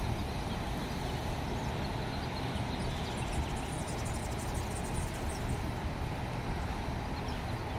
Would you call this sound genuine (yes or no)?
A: yes